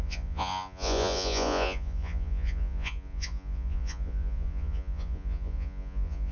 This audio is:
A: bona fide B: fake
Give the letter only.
B